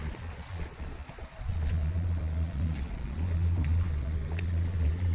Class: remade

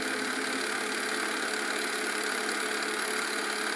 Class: recorded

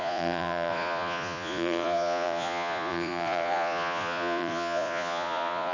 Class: remade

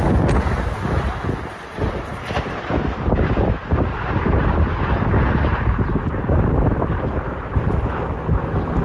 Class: recorded